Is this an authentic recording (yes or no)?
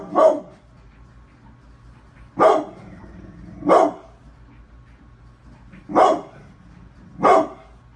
yes